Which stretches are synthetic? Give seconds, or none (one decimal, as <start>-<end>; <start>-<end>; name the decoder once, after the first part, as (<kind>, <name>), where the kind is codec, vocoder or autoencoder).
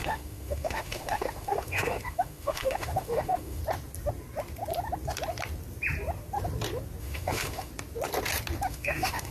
0.0-3.6 (autoencoder, DAC-VAE); 7.0-7.7; 8.7-9.3